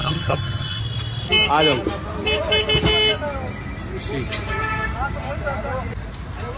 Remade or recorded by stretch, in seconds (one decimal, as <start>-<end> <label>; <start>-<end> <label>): 0.0-0.8 remade; 0.8-6.6 recorded